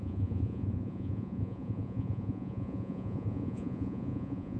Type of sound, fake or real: fake